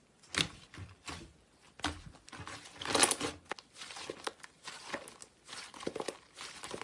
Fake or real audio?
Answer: real